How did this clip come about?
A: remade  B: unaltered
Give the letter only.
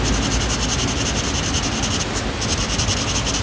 B